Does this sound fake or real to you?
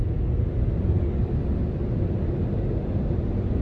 real